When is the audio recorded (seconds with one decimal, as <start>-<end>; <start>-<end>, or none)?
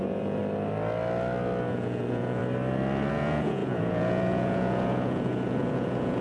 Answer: 0.4-1.7; 2.4-3.1